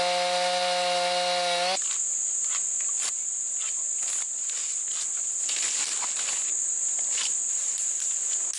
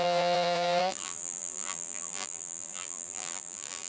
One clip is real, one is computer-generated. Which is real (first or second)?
first